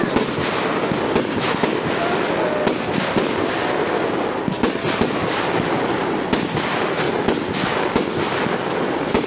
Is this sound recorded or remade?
recorded